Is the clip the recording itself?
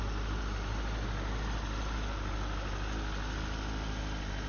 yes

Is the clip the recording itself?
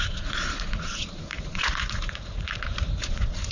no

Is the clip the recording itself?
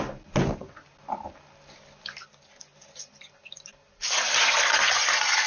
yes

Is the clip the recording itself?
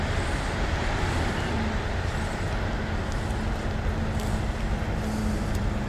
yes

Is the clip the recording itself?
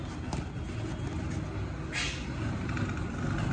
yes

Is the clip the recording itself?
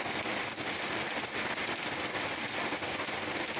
yes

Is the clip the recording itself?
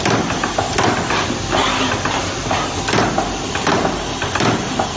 yes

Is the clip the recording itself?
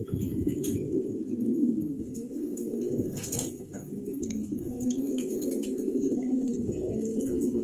no